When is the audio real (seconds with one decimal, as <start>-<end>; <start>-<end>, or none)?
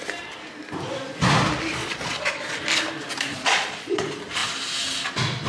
0.0-1.8; 2.6-3.3; 4.0-5.5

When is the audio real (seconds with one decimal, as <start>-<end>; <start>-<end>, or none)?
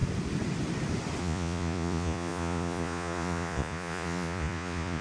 0.0-1.2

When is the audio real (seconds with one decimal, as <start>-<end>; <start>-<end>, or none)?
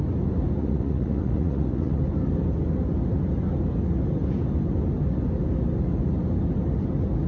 0.0-0.6; 2.0-7.3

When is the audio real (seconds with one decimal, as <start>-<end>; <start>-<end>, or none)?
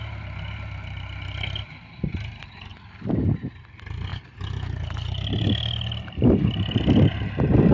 0.0-7.7